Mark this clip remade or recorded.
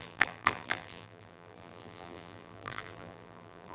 remade